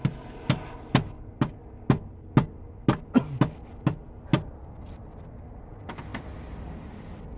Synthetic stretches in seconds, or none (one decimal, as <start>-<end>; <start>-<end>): none